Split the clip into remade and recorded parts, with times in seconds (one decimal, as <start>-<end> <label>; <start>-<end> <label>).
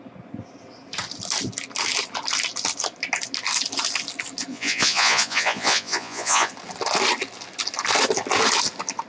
0.0-4.5 recorded; 4.5-6.5 remade; 6.5-9.1 recorded